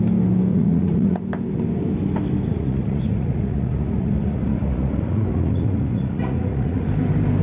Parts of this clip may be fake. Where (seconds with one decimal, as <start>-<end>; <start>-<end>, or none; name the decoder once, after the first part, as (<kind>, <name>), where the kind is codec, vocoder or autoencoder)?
0.5-1.2 (vocoder, Vocos); 2.5-6.9